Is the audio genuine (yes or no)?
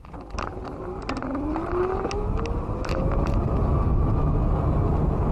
yes